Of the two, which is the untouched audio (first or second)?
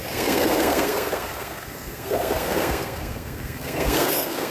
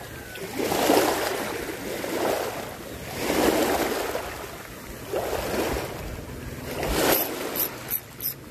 second